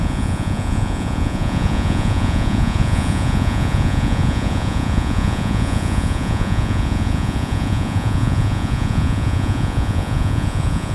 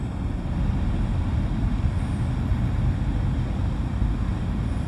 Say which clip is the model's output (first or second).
first